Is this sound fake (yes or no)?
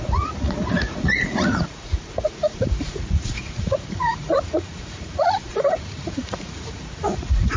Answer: yes